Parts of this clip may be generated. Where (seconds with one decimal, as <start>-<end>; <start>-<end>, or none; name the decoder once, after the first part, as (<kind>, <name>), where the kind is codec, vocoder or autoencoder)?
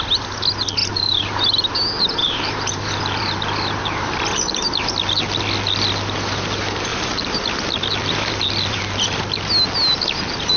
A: 0.8-1.4 (vocoder, BigVGAN v2); 2.2-4.9; 6.9-9.5